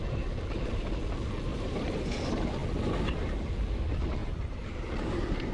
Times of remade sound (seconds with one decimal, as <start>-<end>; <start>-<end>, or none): 1.5-2.0; 4.2-5.5